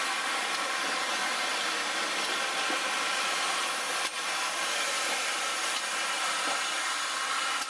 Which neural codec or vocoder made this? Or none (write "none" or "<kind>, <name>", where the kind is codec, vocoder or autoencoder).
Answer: none